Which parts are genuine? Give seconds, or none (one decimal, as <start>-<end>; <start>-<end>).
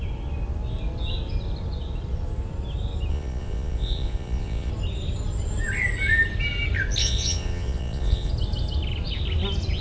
0.0-3.1; 4.7-7.0; 8.3-9.8